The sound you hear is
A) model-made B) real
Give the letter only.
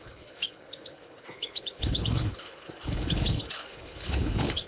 A